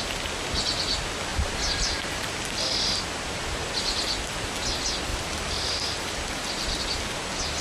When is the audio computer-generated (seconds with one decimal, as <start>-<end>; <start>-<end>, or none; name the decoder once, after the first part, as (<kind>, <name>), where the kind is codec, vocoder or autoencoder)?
1.3-2.3 (vocoder, BigVGAN v2); 5.1-6.8